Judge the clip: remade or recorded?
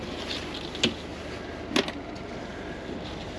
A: recorded